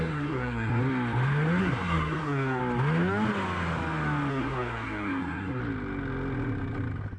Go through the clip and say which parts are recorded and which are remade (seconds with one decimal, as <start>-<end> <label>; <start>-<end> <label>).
0.0-0.8 remade; 0.8-1.6 recorded; 1.6-2.6 remade; 2.6-4.3 recorded; 4.3-5.6 remade; 5.6-7.2 recorded